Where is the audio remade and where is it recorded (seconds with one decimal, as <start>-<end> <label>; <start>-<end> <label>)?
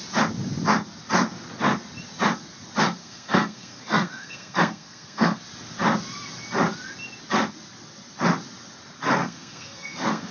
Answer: 0.0-3.0 recorded; 3.0-5.4 remade; 5.4-9.2 recorded; 9.2-10.3 remade